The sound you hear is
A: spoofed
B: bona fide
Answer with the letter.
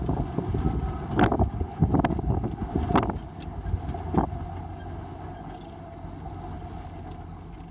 B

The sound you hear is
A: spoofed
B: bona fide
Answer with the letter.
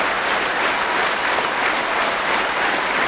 B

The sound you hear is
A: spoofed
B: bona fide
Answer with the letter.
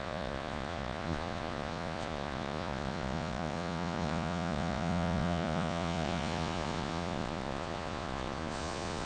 A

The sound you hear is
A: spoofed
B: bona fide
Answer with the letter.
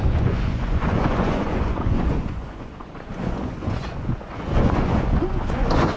A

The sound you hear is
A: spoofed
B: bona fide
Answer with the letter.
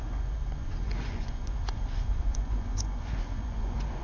A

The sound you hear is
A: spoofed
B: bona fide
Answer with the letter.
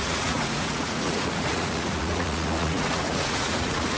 A